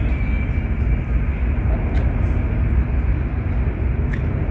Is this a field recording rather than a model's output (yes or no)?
yes